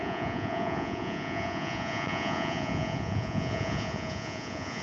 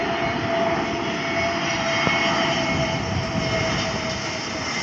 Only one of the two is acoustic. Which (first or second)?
second